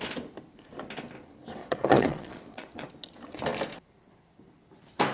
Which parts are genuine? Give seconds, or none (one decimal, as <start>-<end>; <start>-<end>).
0.0-1.6; 2.9-5.1